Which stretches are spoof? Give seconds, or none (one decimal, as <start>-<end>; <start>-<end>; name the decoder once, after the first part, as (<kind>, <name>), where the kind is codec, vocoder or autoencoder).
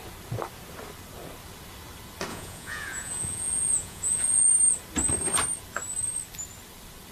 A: 2.3-4.5 (vocoder, Vocos)